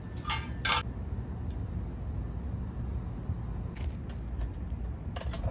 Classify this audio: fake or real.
real